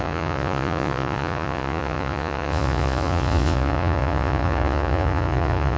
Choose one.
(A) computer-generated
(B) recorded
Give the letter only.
A